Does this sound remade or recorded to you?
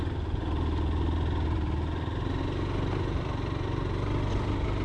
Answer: recorded